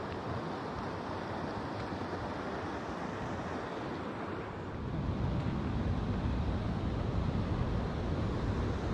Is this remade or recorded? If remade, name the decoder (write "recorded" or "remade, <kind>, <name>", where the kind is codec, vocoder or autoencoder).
recorded